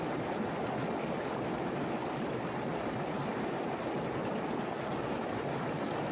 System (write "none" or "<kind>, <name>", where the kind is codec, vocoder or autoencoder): none